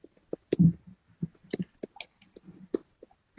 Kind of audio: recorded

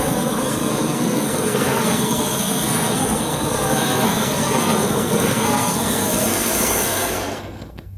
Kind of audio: remade